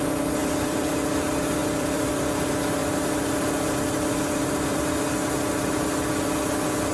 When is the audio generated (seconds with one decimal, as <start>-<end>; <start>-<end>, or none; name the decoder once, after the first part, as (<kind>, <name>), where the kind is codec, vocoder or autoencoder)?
0.4-1.2 (vocoder, BigVGAN v2); 1.6-2.1; 2.8-4.8